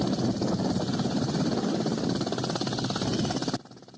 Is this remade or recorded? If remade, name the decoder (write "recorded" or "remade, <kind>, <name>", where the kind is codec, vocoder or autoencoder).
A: recorded